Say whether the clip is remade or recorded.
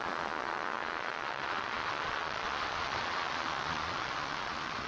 remade